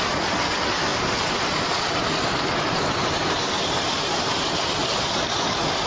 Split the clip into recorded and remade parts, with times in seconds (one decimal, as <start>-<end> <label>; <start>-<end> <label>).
0.0-0.9 recorded; 0.9-4.4 remade; 4.4-5.9 recorded